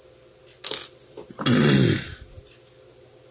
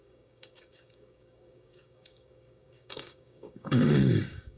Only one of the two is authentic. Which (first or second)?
first